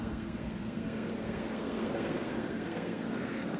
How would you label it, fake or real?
fake